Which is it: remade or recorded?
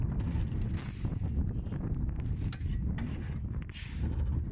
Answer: recorded